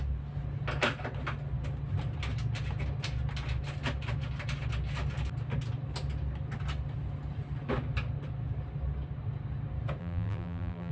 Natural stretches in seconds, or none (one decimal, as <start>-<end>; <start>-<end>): 0.0-10.0